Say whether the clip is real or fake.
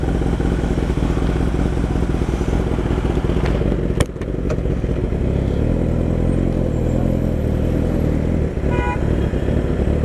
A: real